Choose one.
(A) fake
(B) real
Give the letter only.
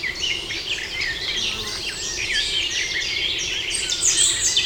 A